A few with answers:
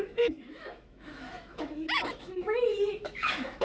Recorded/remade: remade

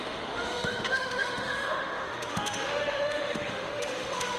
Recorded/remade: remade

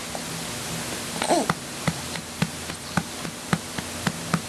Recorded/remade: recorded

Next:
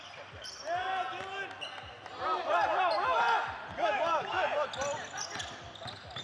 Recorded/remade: recorded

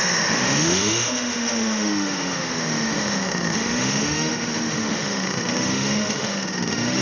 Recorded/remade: remade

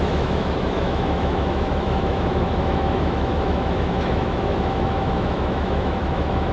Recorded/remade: remade